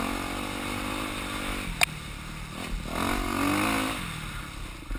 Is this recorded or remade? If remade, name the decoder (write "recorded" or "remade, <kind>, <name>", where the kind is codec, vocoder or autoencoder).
recorded